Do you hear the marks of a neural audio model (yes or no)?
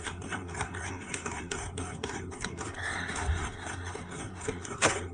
yes